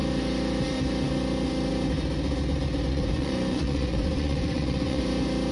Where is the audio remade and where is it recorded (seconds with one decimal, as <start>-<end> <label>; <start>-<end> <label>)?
0.0-2.9 recorded; 2.9-5.0 remade; 5.0-5.5 recorded